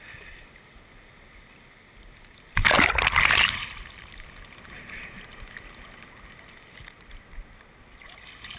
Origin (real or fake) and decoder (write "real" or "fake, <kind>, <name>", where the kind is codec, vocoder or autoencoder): real